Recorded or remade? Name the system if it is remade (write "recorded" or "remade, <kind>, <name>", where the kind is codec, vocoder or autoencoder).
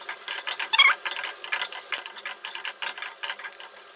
recorded